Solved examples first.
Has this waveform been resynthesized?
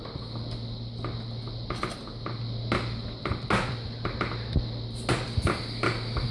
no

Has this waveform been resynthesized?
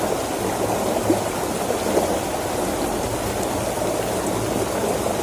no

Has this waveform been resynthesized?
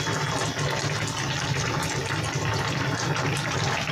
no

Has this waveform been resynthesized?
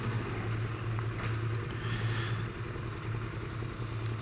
no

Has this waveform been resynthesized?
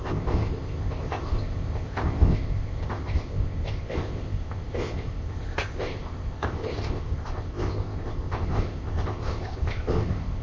yes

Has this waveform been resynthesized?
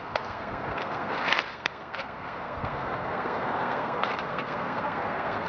yes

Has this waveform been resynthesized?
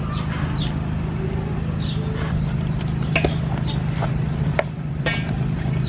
no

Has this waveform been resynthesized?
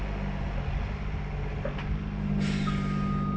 no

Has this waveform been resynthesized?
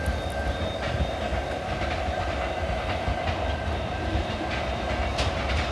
no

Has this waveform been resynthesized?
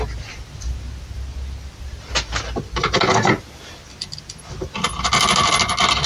no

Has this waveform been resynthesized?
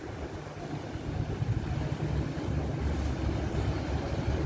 no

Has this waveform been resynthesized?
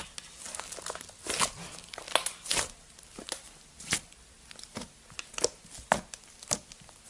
no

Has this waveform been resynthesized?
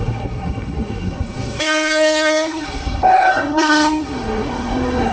yes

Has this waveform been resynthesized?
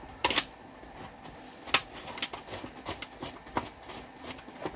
no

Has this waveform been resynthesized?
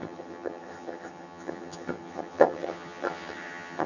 yes